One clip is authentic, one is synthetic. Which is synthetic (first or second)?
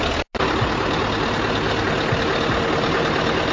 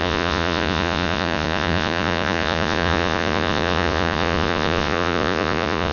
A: second